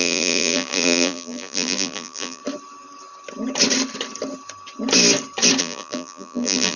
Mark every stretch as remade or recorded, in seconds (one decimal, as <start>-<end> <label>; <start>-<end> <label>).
0.0-2.4 remade; 2.4-5.6 recorded; 5.6-6.8 remade